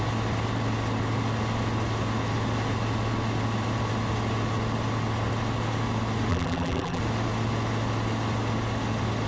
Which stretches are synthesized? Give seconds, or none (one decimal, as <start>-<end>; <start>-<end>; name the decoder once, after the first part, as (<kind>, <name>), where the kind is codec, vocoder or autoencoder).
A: 6.3-7.0 (vocoder, BigVGAN v2)